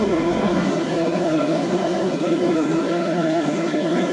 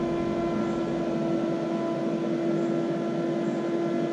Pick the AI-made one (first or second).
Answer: first